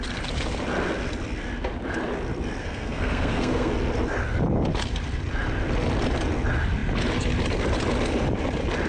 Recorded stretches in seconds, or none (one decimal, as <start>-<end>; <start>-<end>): 0.0-2.6; 3.7-8.9